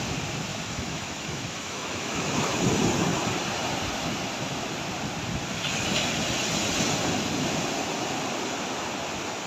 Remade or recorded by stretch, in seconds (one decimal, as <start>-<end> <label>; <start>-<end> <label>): 0.0-0.5 recorded; 0.5-2.6 remade; 2.6-9.5 recorded